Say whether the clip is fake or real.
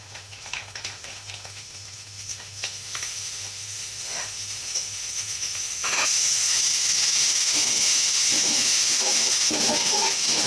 fake